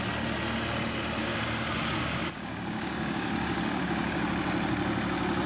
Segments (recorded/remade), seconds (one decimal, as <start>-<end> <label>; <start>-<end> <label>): 0.0-1.2 recorded; 1.2-4.2 remade; 4.2-5.5 recorded